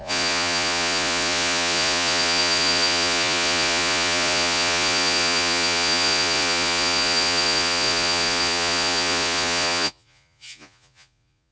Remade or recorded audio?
remade